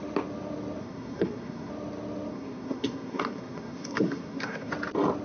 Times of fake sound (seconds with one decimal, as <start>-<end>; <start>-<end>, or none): 0.8-1.7; 2.3-4.7